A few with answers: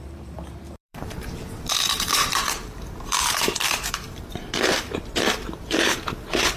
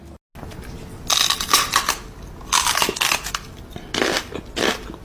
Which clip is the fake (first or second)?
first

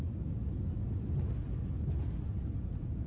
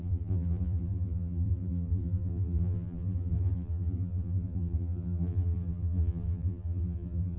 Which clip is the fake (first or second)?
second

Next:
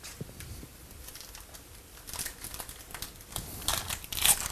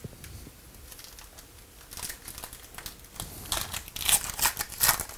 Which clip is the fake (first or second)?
first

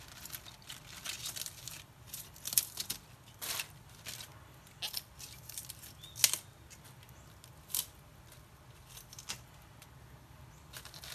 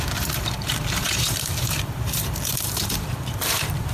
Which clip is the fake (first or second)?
second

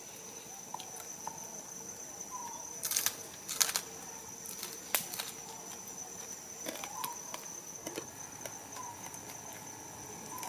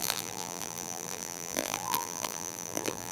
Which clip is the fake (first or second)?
second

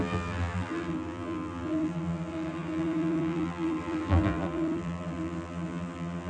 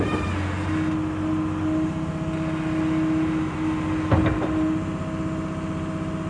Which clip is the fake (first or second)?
first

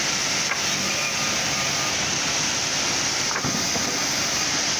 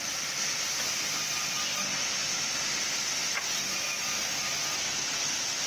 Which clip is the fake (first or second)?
first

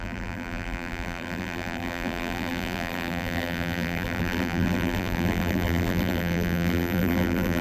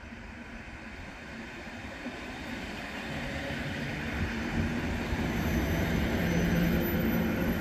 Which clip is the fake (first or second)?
first